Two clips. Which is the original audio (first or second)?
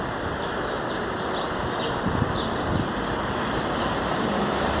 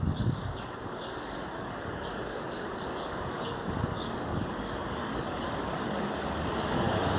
first